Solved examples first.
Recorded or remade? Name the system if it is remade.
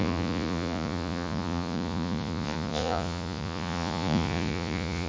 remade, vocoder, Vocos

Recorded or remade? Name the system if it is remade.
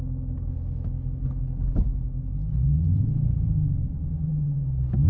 recorded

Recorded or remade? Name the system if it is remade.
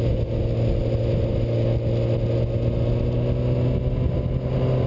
recorded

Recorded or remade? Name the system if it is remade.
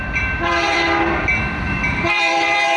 remade, vocoder, BigVGAN v2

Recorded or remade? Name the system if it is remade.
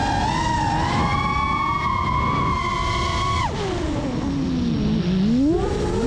recorded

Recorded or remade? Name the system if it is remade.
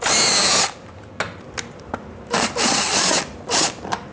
recorded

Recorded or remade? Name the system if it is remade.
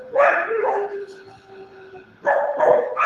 remade, codec, HILCodec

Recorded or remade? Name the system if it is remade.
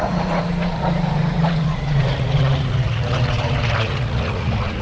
remade, vocoder, Vocos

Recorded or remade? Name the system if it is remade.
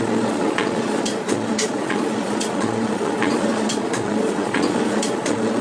remade, vocoder, Vocos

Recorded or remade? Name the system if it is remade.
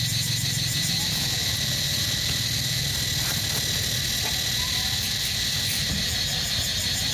recorded